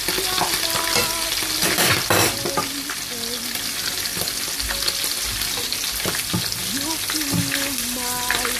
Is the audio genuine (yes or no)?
yes